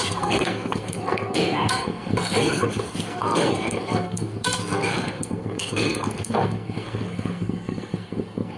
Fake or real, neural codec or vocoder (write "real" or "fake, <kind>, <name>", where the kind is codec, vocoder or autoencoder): fake, codec, SNAC